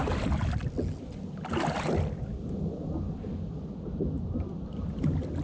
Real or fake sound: real